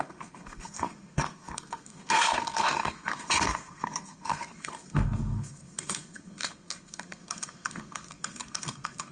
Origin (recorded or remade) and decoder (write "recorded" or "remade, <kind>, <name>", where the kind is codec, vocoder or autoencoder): remade, codec, SNAC